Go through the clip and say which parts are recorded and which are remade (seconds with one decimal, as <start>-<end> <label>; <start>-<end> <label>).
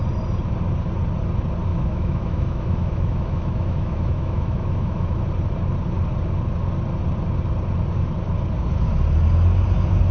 0.0-1.7 recorded; 1.7-5.2 remade; 5.2-10.1 recorded